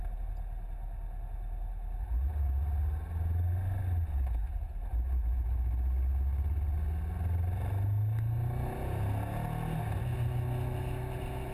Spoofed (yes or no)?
no